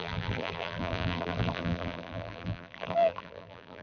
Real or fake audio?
fake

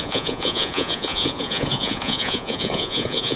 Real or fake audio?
fake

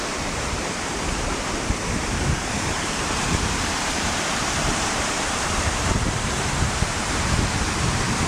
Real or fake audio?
fake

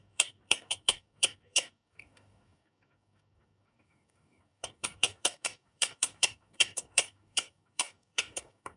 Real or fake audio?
fake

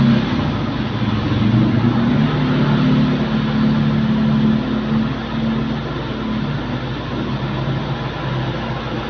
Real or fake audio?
real